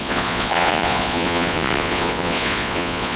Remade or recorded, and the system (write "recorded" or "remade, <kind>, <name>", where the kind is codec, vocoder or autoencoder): remade, vocoder, Vocos